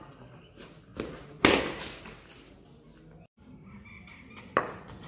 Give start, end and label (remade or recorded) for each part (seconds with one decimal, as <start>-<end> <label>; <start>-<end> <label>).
0.0-5.1 recorded